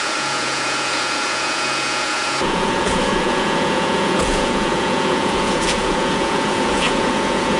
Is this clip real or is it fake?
fake